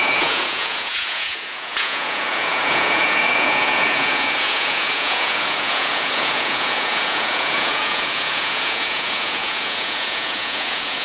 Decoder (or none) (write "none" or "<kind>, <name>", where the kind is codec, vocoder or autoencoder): vocoder, Vocos